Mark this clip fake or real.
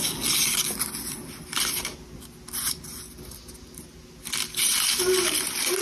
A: real